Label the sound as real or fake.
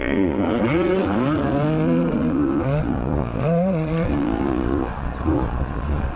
fake